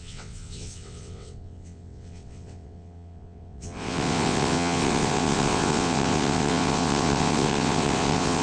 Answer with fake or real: fake